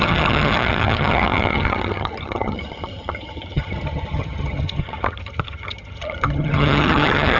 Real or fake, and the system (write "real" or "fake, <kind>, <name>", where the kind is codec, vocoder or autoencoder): fake, vocoder, HiFi-GAN